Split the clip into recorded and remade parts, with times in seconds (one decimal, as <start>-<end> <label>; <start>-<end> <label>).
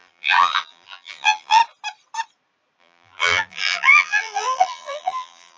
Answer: 0.0-1.6 remade; 1.6-2.8 recorded; 2.8-5.6 remade